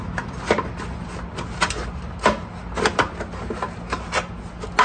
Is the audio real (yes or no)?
yes